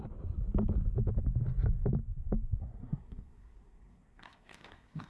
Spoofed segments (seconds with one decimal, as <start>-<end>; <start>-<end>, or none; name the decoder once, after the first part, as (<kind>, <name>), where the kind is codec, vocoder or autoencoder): 2.6-5.1 (codec, SNAC)